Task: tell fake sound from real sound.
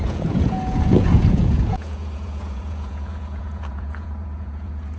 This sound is fake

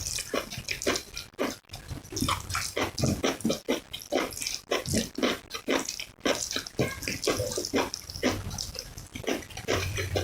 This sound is real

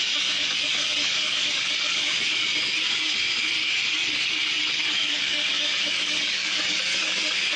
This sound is fake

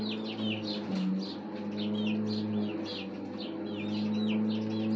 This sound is real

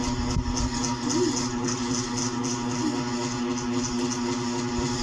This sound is real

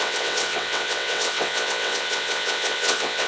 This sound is fake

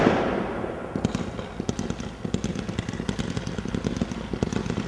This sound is real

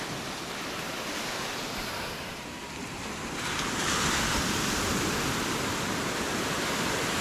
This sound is real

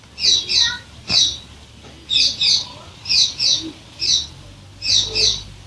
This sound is real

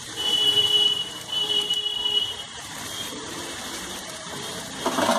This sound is fake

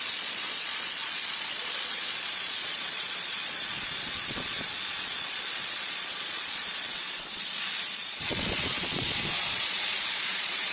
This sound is fake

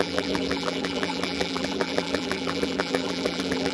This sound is fake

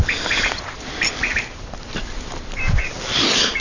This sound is real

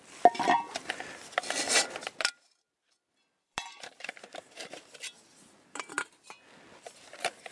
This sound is real